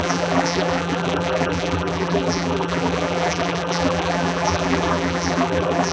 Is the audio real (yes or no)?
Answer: no